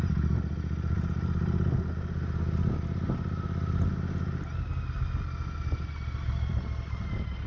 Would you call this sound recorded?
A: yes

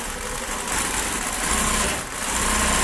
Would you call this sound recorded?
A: yes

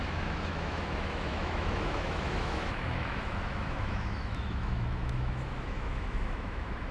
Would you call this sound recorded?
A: no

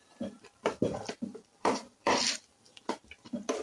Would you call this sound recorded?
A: no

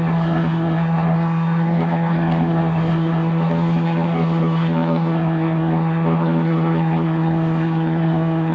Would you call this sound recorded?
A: no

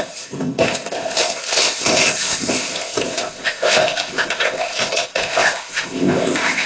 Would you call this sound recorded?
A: no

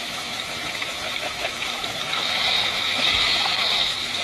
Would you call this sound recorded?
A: no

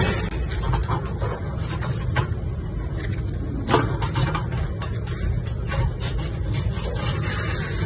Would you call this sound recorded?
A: yes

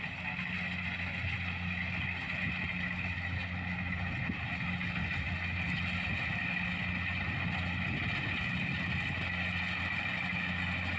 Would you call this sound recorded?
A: yes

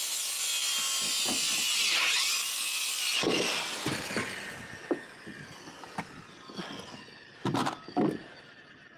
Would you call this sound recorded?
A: yes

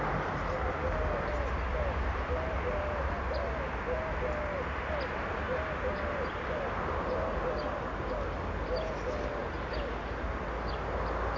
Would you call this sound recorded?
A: yes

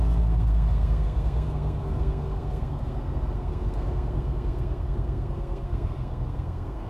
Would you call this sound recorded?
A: no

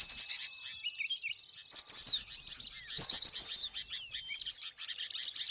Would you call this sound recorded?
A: yes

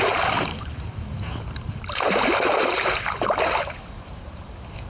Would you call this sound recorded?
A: no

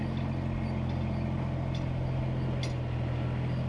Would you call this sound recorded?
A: yes